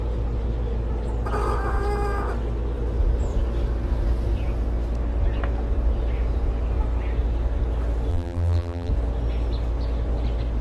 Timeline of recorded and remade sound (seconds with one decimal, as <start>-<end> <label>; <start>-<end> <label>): 0.0-8.1 recorded; 8.1-8.9 remade; 8.9-10.6 recorded